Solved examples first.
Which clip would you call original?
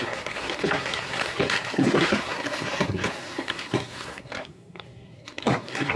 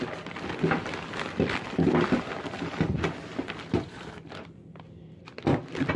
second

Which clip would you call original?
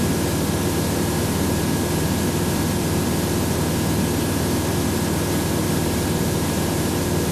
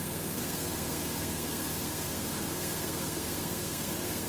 first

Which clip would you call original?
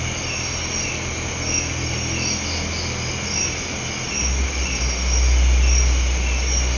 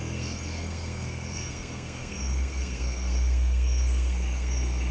first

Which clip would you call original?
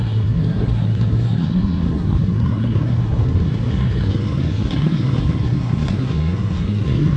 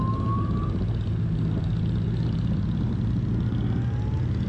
second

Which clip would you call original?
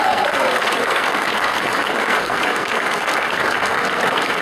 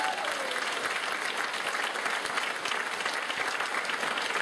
second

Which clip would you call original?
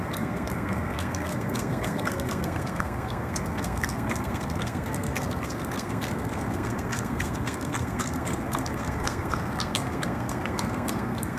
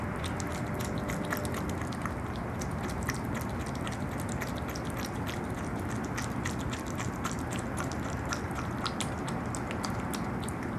second